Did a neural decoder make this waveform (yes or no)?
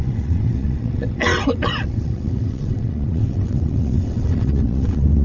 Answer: yes